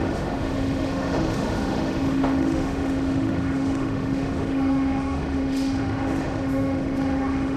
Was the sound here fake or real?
fake